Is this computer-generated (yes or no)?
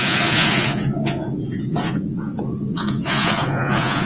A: yes